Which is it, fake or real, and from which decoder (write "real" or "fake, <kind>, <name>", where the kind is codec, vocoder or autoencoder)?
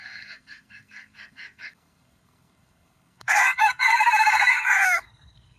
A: fake, codec, SNAC